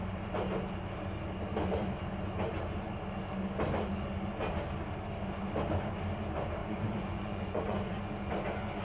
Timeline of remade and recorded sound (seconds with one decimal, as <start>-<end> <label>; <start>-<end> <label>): 0.0-6.6 recorded; 6.6-8.0 remade; 8.0-8.8 recorded